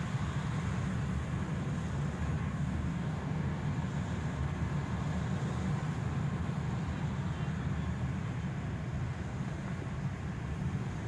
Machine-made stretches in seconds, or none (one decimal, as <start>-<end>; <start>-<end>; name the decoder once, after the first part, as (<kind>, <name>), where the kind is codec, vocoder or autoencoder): 2.4-3.6 (codec, DAC)